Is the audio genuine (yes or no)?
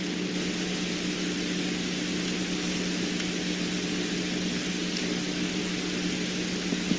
yes